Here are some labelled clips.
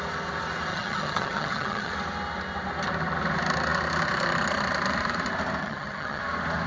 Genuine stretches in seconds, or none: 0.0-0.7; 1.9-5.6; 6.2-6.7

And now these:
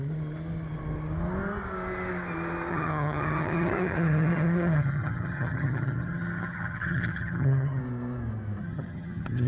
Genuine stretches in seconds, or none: 0.0-2.7; 7.8-8.6

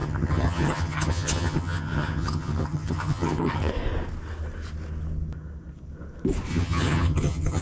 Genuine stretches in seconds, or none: 3.7-6.5

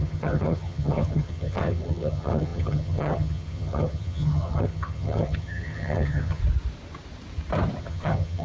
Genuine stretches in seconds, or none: 6.4-7.8

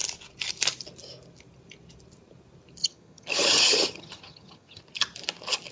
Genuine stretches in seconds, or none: 0.0-2.8; 4.8-5.7

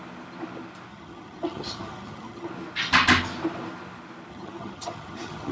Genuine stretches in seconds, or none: 0.0-0.9; 2.5-4.3

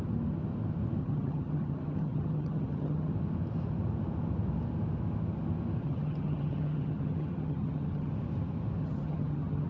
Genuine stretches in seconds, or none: 0.0-1.0; 3.1-5.8; 8.1-8.8